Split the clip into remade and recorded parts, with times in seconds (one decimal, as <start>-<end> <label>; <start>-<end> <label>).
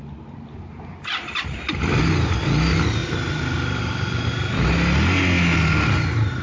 0.0-6.4 recorded